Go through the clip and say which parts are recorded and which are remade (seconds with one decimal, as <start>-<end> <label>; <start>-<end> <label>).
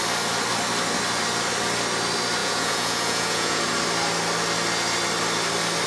0.0-2.4 recorded; 2.4-3.6 remade; 3.6-5.9 recorded